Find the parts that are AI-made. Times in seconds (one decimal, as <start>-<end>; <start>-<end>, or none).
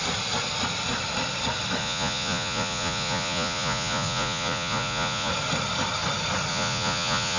1.8-5.3; 6.5-7.4